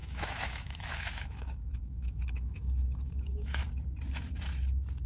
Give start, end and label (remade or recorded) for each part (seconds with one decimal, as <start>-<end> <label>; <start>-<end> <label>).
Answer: 0.0-3.6 remade; 3.6-5.1 recorded